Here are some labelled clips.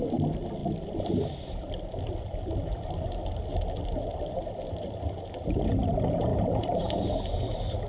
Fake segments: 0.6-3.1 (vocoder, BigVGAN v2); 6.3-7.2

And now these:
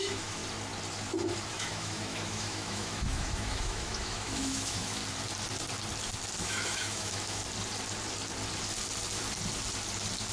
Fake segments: 0.0-0.4 (autoencoder, DAC-VAE); 1.5-5.0; 6.4-7.4

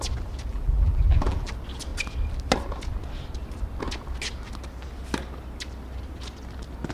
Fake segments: 0.5-1.5 (vocoder, BigVGAN v2)

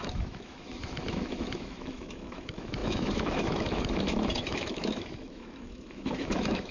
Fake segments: 0.0-6.7 (autoencoder, DAC-VAE)

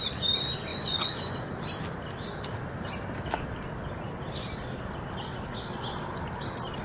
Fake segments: 0.7-1.5 (vocoder, Vocos)

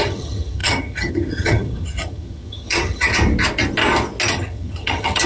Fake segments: 0.0-3.1 (vocoder, HiFi-GAN); 4.3-5.3

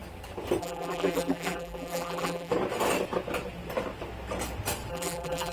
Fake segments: 0.6-2.5 (vocoder, BigVGAN v2); 4.9-5.5

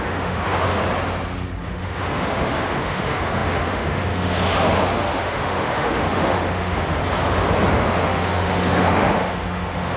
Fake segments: 0.0-0.8 (autoencoder, DAC-VAE); 1.6-7.0; 7.7-10.0